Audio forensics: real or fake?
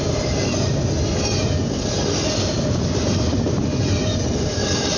real